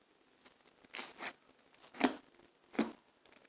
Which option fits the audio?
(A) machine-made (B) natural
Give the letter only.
B